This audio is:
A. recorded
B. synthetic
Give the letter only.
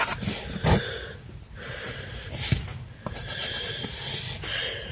A